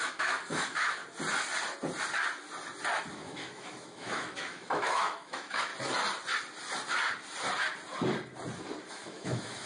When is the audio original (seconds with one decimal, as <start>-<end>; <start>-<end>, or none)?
1.0-3.1; 5.7-8.9

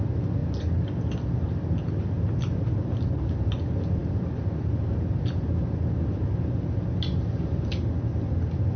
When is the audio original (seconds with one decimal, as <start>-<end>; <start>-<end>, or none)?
0.0-8.8

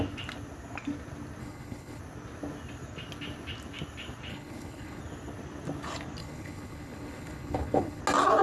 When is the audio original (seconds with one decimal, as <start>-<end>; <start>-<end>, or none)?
0.0-1.4; 2.0-4.3; 5.0-6.2; 8.0-8.4

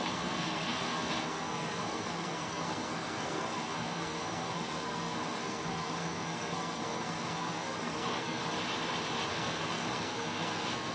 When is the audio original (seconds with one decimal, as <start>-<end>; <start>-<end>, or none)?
8.4-9.3

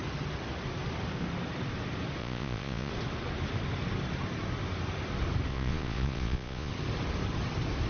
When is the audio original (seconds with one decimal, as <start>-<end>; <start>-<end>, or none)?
0.0-2.2; 2.9-5.5; 6.7-7.9

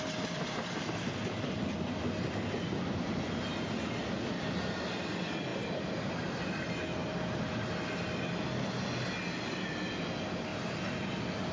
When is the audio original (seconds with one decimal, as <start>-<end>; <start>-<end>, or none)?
0.0-5.5; 6.3-10.5